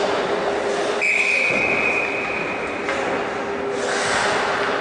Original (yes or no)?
yes